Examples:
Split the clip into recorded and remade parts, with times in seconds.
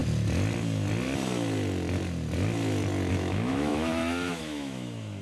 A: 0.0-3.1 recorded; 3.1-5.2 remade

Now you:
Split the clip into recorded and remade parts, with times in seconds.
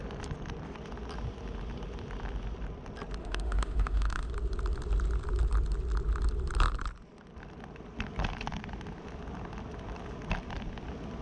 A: 0.0-3.2 recorded; 3.2-4.3 remade; 4.3-11.2 recorded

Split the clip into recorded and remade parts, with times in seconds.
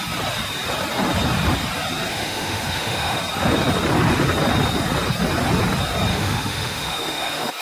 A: 0.0-2.1 recorded; 2.1-3.2 remade; 3.2-6.1 recorded; 6.1-7.6 remade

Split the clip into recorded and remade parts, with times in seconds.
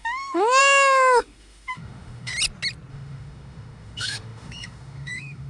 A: 0.0-2.3 remade; 2.3-2.9 recorded; 2.9-5.5 remade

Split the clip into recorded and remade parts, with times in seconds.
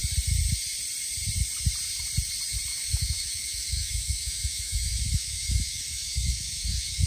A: 0.0-2.7 recorded; 2.7-7.1 remade